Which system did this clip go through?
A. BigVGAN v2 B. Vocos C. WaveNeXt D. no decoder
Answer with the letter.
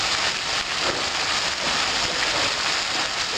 D